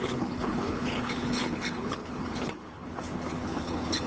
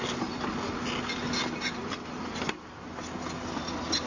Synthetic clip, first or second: first